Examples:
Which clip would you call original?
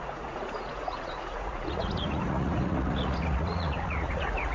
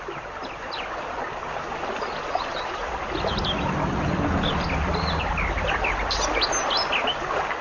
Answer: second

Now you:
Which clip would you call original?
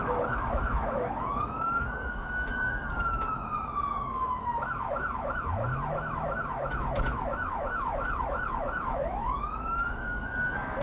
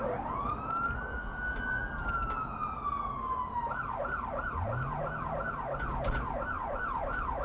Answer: second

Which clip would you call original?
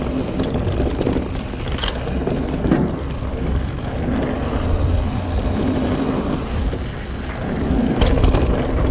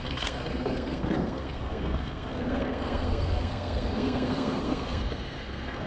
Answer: first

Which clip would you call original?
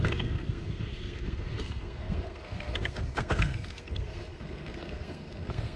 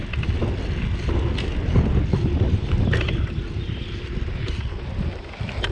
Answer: second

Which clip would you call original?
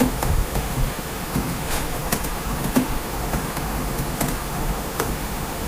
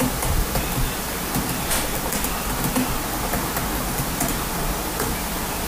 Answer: second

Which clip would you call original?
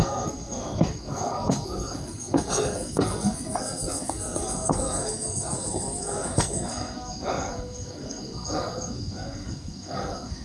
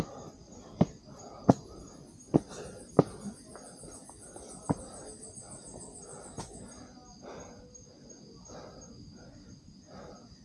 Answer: second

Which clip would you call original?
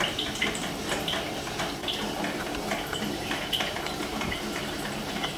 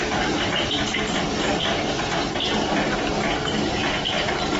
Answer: second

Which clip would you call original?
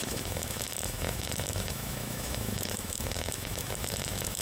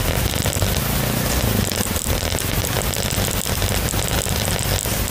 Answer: second